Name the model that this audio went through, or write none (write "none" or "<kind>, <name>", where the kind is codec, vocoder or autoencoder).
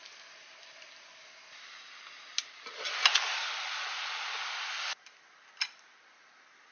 none